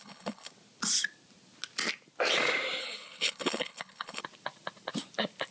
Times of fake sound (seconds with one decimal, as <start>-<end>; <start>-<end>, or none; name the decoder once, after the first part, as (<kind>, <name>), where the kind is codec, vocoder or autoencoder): 0.0-0.5 (codec, HILCodec); 2.8-4.2